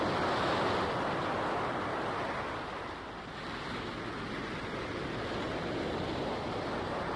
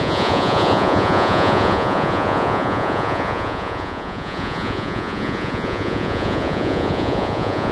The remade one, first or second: second